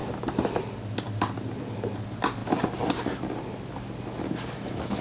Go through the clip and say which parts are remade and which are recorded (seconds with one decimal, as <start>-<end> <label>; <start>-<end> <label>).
0.0-5.0 recorded